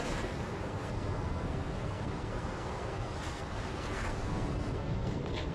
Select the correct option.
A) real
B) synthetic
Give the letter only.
B